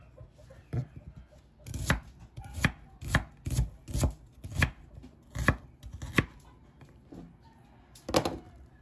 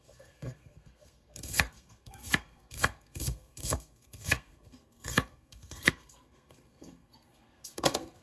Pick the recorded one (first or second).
first